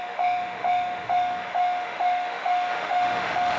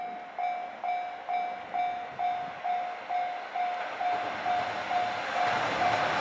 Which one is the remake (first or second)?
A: first